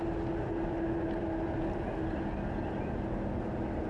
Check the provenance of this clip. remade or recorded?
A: recorded